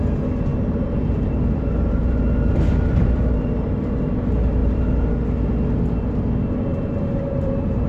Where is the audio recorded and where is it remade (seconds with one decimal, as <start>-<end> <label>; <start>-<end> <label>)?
0.0-0.5 recorded; 0.5-4.1 remade; 4.1-4.6 recorded; 4.6-5.1 remade; 5.1-6.7 recorded; 6.7-7.9 remade